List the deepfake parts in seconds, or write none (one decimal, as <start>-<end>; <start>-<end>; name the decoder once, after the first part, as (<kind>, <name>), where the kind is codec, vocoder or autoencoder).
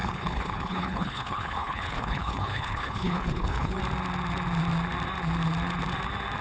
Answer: 0.0-3.8 (codec, HILCodec)